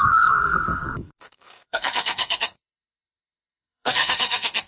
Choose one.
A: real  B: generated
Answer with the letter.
B